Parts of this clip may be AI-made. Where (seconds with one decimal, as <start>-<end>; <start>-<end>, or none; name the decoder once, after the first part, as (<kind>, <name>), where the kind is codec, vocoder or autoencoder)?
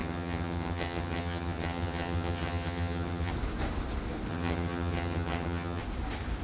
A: 0.0-3.3 (vocoder, HiFi-GAN); 4.3-5.8